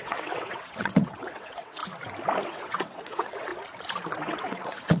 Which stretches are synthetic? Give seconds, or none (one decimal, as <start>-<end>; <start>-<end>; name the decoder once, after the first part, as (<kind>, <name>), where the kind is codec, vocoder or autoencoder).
0.0-1.8 (vocoder, WaveNeXt); 2.5-3.5; 4.2-5.0